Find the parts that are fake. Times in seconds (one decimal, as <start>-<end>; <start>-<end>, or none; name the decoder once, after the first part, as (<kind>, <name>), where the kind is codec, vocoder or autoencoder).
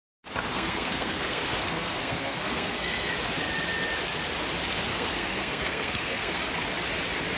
0.5-3.1 (codec, SNAC); 4.9-6.5